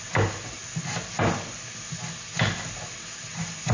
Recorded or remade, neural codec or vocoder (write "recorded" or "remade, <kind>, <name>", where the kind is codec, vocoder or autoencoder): recorded